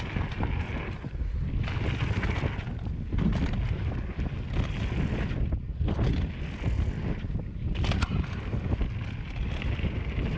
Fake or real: real